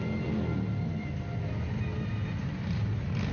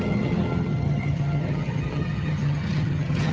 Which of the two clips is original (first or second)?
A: first